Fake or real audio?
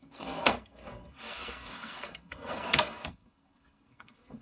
fake